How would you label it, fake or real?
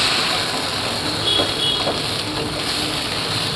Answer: real